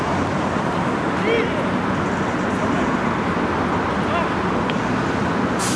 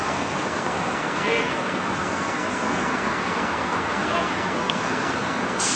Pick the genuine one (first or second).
first